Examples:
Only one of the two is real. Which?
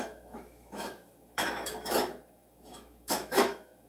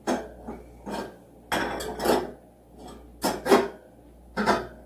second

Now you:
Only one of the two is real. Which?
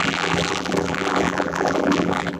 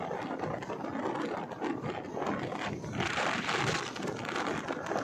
second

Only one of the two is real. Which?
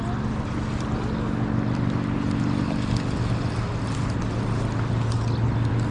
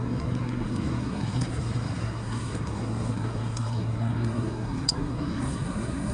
first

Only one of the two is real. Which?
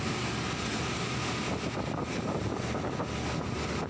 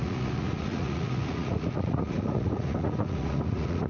first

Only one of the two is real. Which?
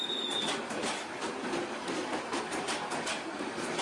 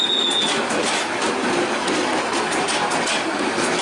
second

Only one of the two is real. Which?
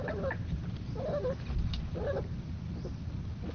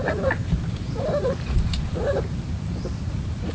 first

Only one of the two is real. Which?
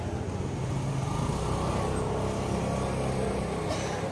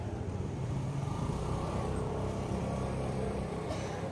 first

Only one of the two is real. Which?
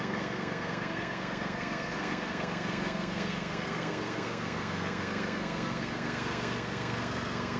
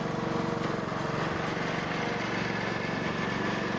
second